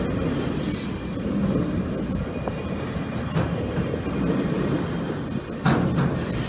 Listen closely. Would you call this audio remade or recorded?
recorded